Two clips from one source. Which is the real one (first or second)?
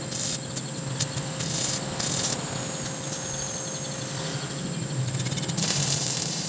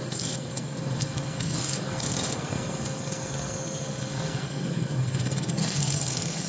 first